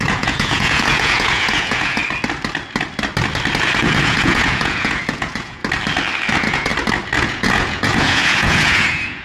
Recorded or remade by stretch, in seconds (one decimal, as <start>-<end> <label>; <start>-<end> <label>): 0.0-2.0 remade; 2.0-3.8 recorded; 3.8-5.6 remade; 5.6-6.3 recorded; 6.3-6.7 remade; 6.7-7.2 recorded; 7.2-9.2 remade